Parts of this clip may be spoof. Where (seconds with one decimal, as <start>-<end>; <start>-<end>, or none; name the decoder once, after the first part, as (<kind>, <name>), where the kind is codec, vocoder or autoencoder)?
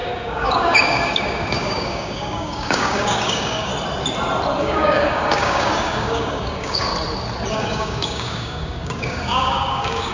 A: 0.0-3.7 (codec, DAC); 4.6-6.9; 7.5-10.1